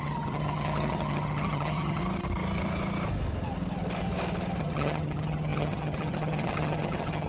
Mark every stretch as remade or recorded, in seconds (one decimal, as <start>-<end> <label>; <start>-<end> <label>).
0.0-2.0 remade; 2.0-4.6 recorded; 4.6-7.3 remade